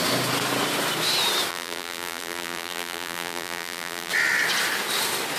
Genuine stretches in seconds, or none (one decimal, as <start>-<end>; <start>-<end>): 0.0-1.5; 4.1-5.4